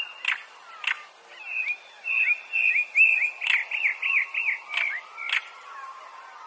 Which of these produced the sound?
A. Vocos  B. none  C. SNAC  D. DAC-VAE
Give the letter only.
B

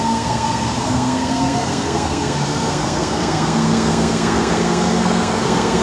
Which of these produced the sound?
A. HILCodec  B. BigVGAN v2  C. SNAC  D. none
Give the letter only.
C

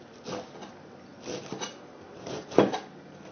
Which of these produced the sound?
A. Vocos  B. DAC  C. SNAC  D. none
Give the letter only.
D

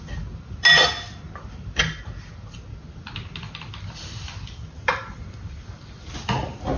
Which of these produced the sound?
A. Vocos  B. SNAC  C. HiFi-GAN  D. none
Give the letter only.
D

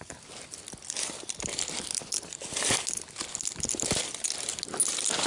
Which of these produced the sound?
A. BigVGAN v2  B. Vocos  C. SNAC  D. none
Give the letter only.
D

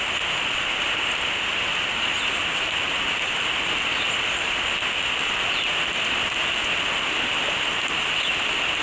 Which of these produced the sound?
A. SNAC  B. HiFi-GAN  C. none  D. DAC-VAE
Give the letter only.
C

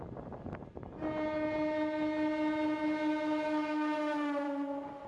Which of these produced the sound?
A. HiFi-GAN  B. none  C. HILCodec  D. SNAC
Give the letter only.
B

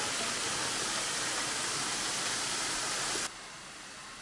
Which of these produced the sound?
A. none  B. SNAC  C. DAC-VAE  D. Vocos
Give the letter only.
A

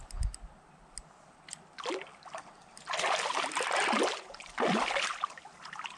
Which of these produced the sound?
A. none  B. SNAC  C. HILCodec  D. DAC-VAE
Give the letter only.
A